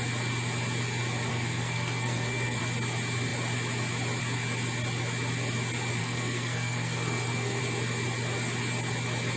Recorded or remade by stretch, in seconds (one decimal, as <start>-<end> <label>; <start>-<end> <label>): 0.0-1.3 recorded; 1.3-2.6 remade; 2.6-6.0 recorded; 6.0-7.6 remade; 7.6-9.4 recorded